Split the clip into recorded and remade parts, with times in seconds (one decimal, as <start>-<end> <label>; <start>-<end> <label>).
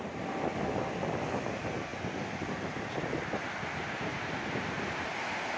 0.0-5.6 recorded